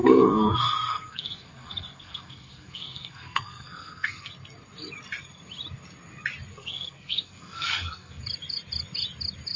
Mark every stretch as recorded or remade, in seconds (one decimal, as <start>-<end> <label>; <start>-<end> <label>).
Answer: 0.0-4.3 remade; 4.3-6.5 recorded; 6.5-8.2 remade; 8.2-9.6 recorded

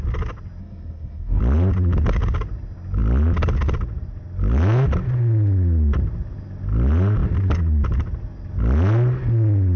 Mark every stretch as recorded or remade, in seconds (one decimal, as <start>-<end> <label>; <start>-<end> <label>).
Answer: 0.0-0.6 recorded; 0.6-1.4 remade; 1.4-9.8 recorded

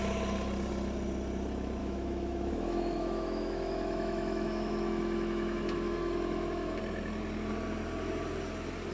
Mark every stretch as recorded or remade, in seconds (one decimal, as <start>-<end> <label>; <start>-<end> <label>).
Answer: 0.0-1.8 recorded; 1.8-6.8 remade; 6.8-8.9 recorded

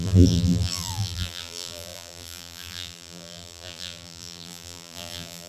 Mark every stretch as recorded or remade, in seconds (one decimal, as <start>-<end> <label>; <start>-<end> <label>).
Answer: 0.0-5.5 remade

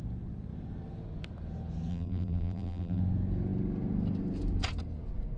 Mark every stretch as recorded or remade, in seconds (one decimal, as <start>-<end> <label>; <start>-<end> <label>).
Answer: 0.0-1.9 recorded; 1.9-3.0 remade; 3.0-5.4 recorded

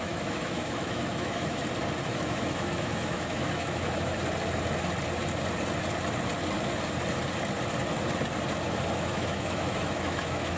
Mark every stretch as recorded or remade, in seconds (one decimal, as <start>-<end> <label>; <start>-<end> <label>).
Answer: 0.0-1.6 remade; 1.6-2.1 recorded; 2.1-4.1 remade; 4.1-9.0 recorded; 9.0-10.6 remade